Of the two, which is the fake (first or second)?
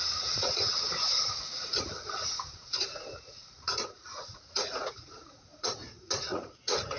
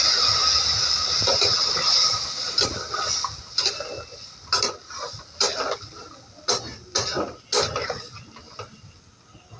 first